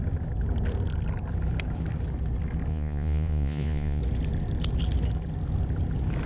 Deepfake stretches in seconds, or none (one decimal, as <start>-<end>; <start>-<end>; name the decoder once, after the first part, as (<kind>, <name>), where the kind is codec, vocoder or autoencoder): 2.7-4.0 (vocoder, Vocos)